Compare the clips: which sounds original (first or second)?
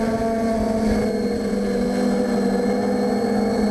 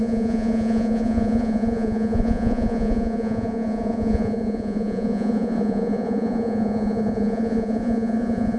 first